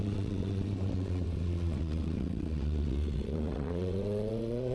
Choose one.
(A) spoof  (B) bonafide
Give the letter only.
A